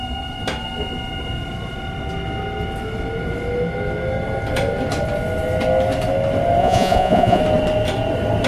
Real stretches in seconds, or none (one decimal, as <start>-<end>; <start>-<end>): 0.0-6.6; 7.4-8.5